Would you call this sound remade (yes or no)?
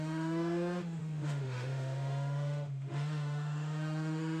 yes